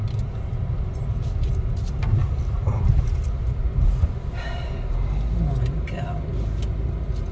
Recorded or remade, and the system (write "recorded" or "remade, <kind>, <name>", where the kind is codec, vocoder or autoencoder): recorded